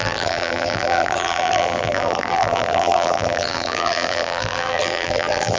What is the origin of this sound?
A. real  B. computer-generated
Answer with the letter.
B